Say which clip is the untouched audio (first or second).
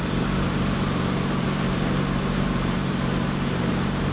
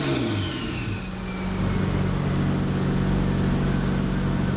second